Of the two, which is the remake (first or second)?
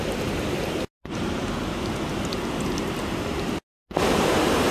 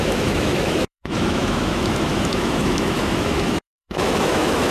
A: second